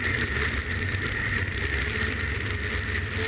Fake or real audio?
fake